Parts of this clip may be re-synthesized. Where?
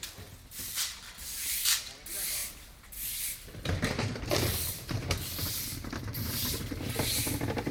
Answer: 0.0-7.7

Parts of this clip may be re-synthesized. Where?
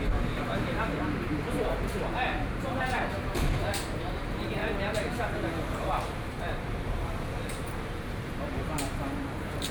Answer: 0.0-4.6; 5.8-9.7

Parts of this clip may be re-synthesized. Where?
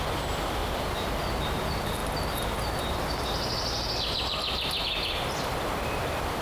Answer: 0.0-2.0; 5.8-6.4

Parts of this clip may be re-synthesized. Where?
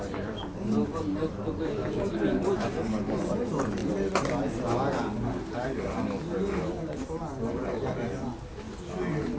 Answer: 0.0-3.8; 6.8-7.2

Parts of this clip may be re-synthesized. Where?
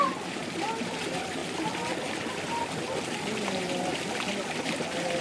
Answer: 1.4-2.6; 3.9-4.6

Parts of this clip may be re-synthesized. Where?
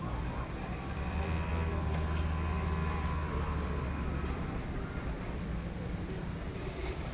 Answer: 0.0-1.5; 4.1-7.1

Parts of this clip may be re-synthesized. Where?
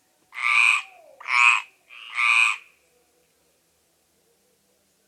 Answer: 0.4-1.0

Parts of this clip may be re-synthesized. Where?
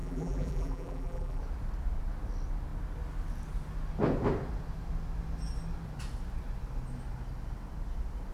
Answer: 0.0-1.4